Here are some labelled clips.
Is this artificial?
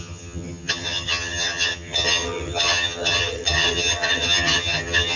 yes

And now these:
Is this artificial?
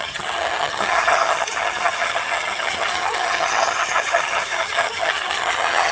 yes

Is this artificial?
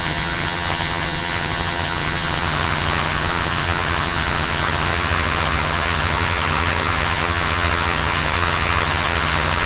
yes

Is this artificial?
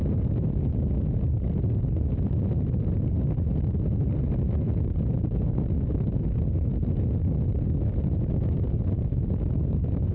no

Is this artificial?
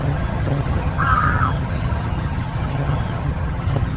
yes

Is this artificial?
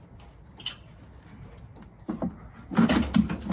no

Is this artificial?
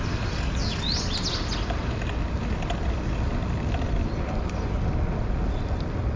no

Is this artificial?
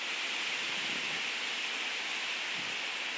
no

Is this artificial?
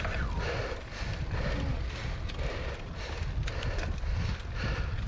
no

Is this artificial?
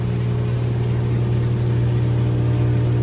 no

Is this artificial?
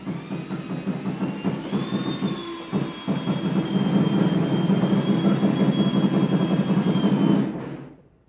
no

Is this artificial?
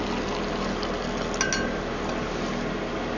no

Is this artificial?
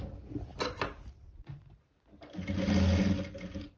no